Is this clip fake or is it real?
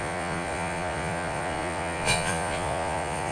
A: fake